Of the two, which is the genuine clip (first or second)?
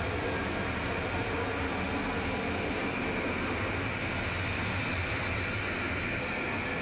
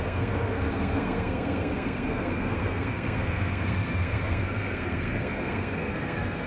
first